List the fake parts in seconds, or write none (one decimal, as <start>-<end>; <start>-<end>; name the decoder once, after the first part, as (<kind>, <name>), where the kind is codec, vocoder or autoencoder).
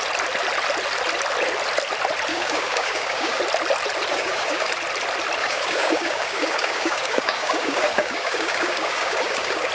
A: 2.3-3.4 (codec, DAC); 4.1-4.7; 5.4-9.7